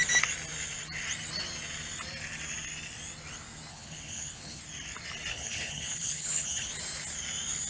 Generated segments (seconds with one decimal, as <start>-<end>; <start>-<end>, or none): 3.7-4.6; 5.3-6.7